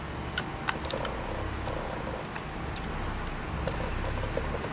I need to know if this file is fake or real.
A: real